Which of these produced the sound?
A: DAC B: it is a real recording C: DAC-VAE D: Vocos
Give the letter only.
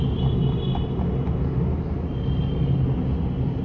B